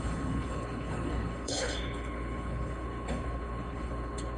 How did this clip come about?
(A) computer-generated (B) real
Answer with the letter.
A